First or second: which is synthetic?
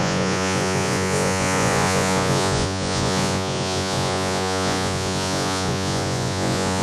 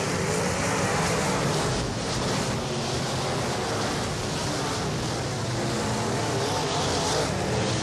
first